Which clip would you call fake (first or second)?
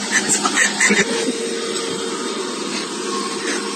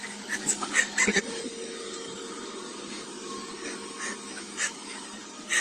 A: second